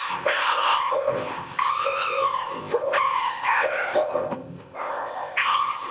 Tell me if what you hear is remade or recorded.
remade